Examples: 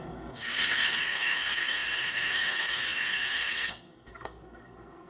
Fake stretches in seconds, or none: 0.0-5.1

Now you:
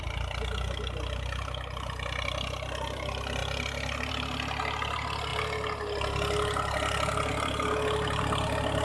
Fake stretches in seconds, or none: none

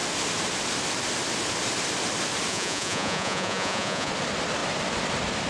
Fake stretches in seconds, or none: 2.5-4.1

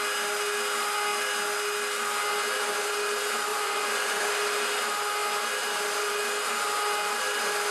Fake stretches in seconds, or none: 3.5-4.2

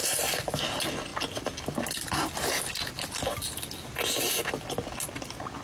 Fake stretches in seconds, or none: 0.0-0.6

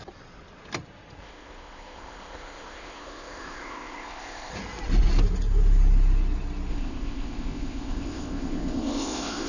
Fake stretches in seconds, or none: 1.2-4.5; 6.7-9.5